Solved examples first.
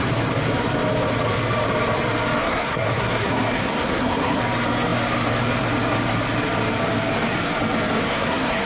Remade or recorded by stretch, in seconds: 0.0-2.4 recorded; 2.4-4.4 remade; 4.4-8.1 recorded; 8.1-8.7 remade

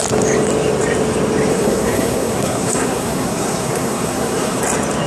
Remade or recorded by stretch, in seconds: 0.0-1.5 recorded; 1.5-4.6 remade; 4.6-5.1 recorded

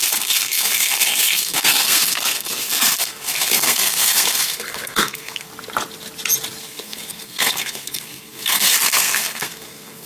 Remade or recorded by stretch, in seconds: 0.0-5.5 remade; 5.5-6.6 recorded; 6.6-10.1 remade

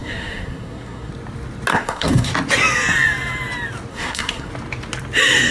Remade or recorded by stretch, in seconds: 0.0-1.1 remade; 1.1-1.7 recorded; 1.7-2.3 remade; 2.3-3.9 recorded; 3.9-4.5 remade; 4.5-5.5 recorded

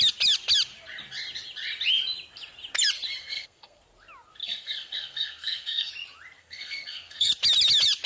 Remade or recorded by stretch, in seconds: 0.0-3.2 recorded; 3.2-3.8 remade; 3.8-4.4 recorded; 4.4-5.9 remade; 5.9-6.4 recorded; 6.4-7.3 remade; 7.3-8.1 recorded

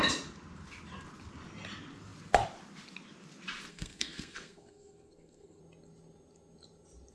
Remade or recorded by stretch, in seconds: 0.0-3.7 recorded; 3.7-5.6 remade; 5.6-7.1 recorded